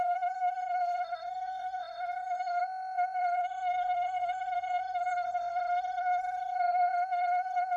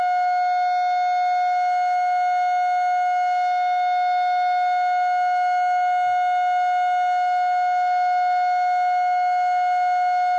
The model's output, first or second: first